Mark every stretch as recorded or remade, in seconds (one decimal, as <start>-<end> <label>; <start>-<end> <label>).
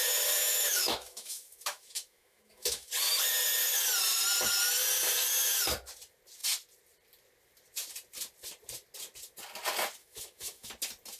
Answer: 0.0-0.4 recorded; 0.4-2.9 remade; 2.9-10.0 recorded; 10.0-10.7 remade; 10.7-11.2 recorded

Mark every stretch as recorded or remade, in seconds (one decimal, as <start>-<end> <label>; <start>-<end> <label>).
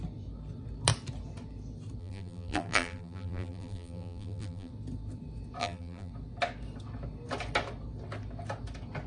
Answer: 0.0-2.0 recorded; 2.0-4.7 remade; 4.7-5.6 recorded; 5.6-6.1 remade; 6.1-9.1 recorded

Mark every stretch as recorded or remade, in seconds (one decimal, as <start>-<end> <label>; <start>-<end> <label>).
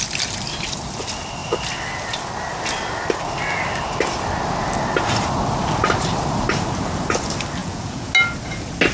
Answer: 0.0-7.6 recorded; 7.6-8.1 remade; 8.1-8.9 recorded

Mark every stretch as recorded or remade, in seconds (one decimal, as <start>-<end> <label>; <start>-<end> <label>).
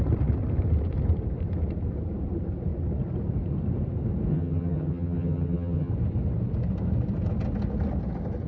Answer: 0.0-4.3 recorded; 4.3-5.9 remade; 5.9-8.5 recorded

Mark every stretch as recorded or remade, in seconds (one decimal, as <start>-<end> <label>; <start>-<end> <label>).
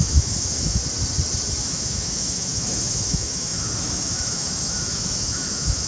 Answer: 0.0-0.8 remade; 0.8-1.6 recorded; 1.6-5.9 remade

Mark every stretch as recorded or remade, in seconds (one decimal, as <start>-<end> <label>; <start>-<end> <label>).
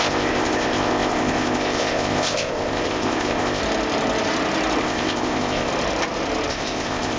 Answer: 0.0-3.6 remade; 3.6-4.8 recorded; 4.8-5.7 remade; 5.7-6.5 recorded; 6.5-7.2 remade